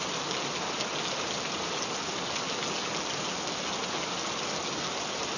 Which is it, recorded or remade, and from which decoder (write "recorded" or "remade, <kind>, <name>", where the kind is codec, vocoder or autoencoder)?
recorded